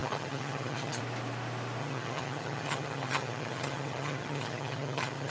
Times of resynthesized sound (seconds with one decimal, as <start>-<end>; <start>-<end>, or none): 0.0-1.0; 1.8-5.3